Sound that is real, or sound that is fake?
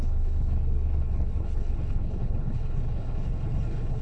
fake